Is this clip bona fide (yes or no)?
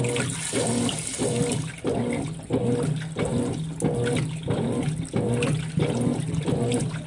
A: yes